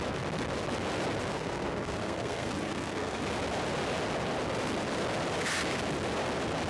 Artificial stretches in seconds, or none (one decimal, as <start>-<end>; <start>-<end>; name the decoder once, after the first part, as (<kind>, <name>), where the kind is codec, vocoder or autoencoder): 1.3-3.2 (codec, SNAC)